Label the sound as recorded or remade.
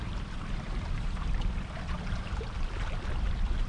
remade